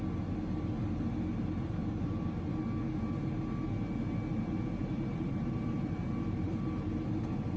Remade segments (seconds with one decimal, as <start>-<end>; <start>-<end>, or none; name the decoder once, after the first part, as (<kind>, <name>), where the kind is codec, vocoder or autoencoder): 1.8-2.5 (vocoder, BigVGAN v2); 4.8-6.6